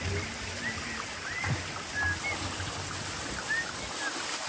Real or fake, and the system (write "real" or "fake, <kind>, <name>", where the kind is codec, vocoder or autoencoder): real